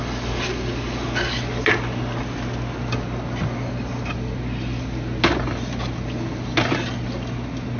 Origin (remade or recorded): recorded